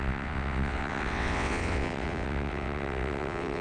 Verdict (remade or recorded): remade